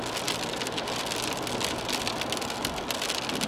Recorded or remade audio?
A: recorded